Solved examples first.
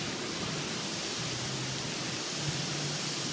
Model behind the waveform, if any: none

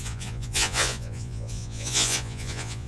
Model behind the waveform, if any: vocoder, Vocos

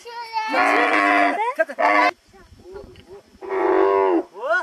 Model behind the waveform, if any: none